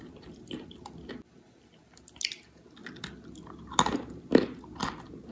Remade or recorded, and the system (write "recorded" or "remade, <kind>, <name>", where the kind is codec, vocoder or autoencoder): recorded